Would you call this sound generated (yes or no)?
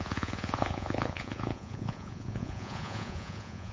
yes